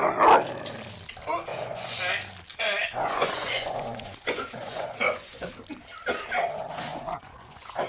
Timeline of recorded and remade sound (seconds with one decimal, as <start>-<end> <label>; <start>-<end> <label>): 0.0-1.5 recorded; 1.5-2.0 remade; 2.0-2.5 recorded; 2.5-5.5 remade; 5.5-6.9 recorded; 6.9-7.9 remade

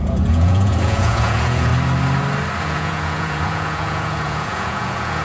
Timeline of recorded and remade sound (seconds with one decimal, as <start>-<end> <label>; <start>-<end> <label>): 0.0-1.7 remade; 1.7-2.6 recorded; 2.6-5.2 remade

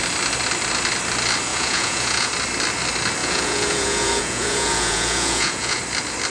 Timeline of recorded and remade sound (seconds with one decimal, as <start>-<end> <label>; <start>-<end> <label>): 0.0-1.5 recorded; 1.5-2.3 remade; 2.3-3.2 recorded; 3.2-5.8 remade; 5.8-6.3 recorded

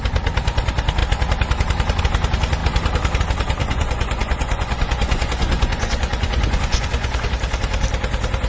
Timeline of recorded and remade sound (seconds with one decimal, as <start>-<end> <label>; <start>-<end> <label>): 0.0-3.6 recorded; 3.6-7.3 remade; 7.3-8.5 recorded

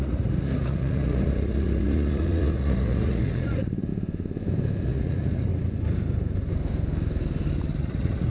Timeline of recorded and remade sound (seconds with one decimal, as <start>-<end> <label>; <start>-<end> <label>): 0.0-3.9 remade; 3.9-4.8 recorded; 4.8-5.5 remade; 5.5-7.8 recorded; 7.8-8.3 remade

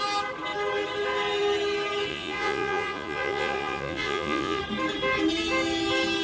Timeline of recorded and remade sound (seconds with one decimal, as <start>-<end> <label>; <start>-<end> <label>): 0.0-2.1 recorded; 2.1-4.6 remade; 4.6-6.2 recorded

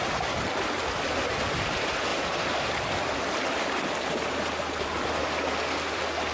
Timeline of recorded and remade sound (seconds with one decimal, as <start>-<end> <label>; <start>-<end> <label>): 0.0-6.3 recorded